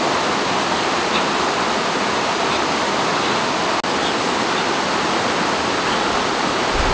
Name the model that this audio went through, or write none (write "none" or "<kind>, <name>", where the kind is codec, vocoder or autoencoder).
none